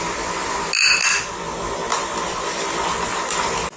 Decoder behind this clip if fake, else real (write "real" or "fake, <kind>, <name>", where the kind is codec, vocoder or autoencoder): real